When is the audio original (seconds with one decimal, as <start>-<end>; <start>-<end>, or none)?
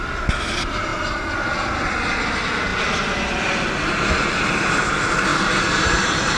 0.0-5.3